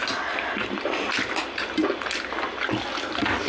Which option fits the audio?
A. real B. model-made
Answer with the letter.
A